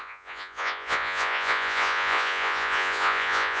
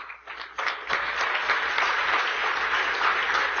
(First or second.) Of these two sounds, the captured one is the second